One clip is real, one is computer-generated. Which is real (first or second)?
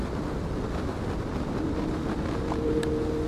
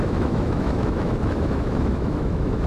first